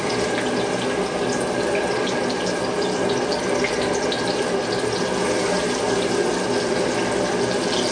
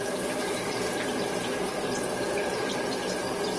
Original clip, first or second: first